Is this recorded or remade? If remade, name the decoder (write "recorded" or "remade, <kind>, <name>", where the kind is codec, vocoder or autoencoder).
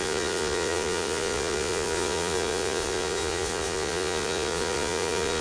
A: remade, vocoder, Vocos